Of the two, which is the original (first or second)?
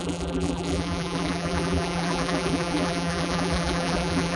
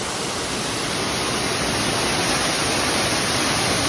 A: second